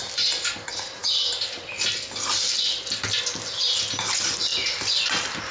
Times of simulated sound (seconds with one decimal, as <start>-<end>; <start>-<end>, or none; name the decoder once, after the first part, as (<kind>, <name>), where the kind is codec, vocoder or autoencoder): 1.0-2.7 (vocoder, BigVGAN v2)